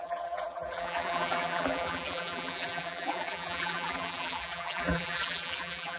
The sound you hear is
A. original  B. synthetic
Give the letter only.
B